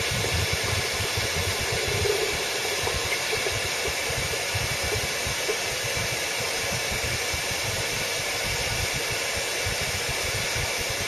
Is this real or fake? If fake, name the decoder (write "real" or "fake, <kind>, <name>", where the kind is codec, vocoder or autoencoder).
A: real